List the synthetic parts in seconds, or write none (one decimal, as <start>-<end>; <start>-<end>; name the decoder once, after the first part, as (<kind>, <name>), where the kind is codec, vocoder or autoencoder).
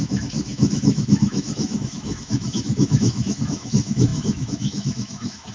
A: 0.0-5.5 (autoencoder, DAC-VAE)